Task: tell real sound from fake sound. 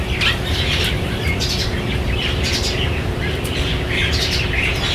fake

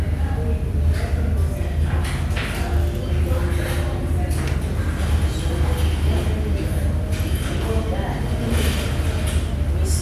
real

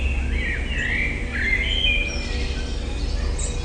real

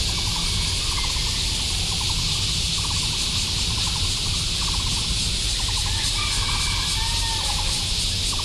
real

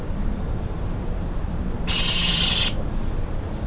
fake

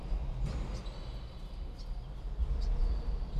real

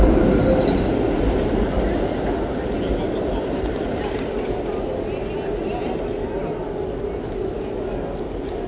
real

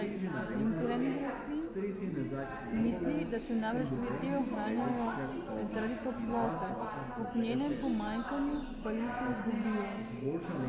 real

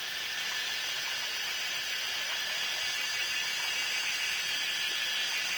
real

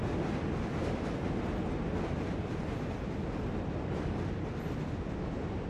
real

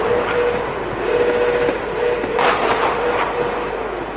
real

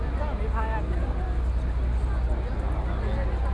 real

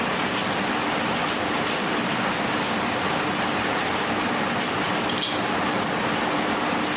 real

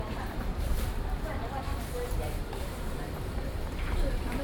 fake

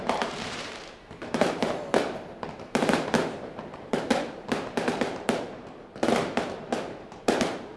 fake